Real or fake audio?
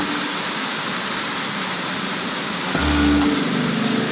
real